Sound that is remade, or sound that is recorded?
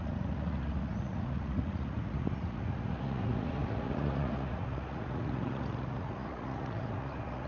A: remade